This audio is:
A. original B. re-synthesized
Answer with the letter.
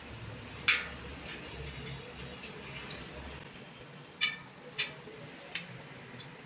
A